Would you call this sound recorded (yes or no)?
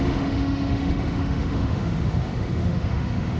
no